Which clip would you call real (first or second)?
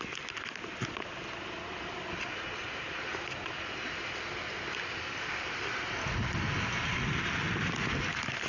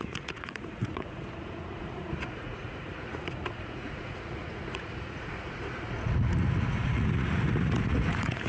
first